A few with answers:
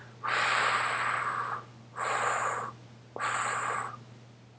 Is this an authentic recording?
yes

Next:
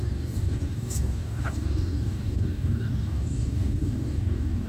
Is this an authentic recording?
no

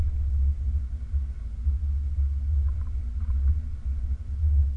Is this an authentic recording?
yes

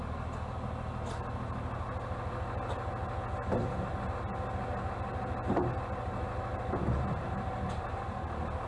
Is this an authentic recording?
yes